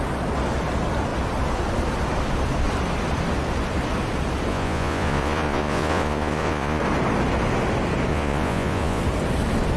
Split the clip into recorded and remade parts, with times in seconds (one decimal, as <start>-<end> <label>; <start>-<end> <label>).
0.0-4.5 recorded; 4.5-6.8 remade; 6.8-8.1 recorded; 8.1-9.0 remade; 9.0-9.8 recorded